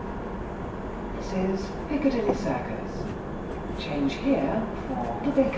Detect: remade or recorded recorded